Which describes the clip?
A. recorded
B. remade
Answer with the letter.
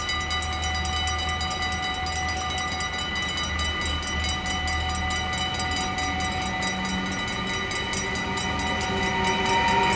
A